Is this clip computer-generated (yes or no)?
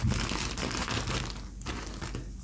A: no